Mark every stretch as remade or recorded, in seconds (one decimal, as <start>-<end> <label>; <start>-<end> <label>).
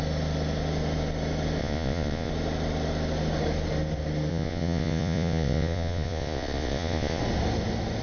0.0-1.6 recorded; 1.6-2.3 remade; 2.3-4.3 recorded; 4.3-7.2 remade; 7.2-8.0 recorded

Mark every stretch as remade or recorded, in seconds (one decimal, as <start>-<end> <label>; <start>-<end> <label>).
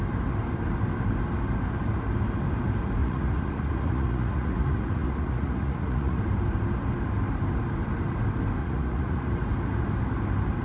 0.0-3.0 recorded; 3.0-6.2 remade; 6.2-8.6 recorded; 8.6-9.2 remade; 9.2-10.6 recorded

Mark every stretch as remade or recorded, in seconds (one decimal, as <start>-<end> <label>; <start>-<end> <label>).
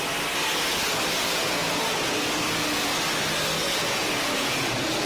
0.0-1.2 recorded; 1.2-2.1 remade; 2.1-3.6 recorded; 3.6-5.1 remade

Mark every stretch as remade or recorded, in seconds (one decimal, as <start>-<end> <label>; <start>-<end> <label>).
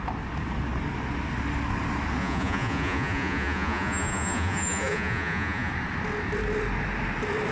0.0-2.2 recorded; 2.2-5.7 remade; 5.7-7.5 recorded